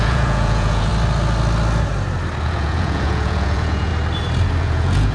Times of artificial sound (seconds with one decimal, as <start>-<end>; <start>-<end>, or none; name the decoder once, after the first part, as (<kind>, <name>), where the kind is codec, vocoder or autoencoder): 0.0-0.9 (vocoder, Vocos); 2.4-3.9; 4.6-5.1